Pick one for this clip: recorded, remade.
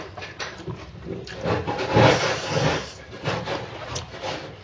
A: recorded